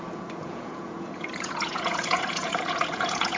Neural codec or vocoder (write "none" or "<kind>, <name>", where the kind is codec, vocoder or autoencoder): vocoder, Vocos